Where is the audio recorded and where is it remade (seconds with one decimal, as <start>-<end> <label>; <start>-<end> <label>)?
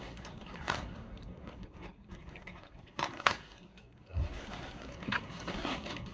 0.0-6.1 remade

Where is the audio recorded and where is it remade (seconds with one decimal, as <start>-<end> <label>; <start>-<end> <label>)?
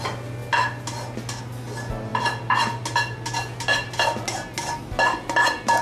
0.0-5.8 recorded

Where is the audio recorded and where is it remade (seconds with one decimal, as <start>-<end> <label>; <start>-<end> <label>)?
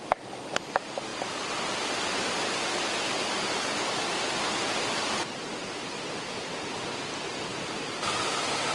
0.0-8.7 recorded